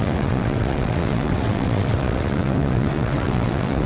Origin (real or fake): fake